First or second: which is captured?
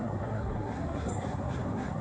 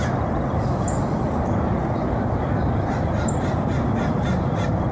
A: second